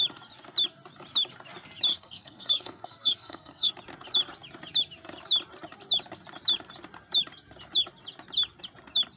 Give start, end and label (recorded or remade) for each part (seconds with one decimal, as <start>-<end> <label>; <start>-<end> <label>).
0.0-1.9 recorded; 1.9-3.7 remade; 3.7-9.2 recorded